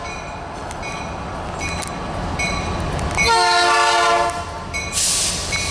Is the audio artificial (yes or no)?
no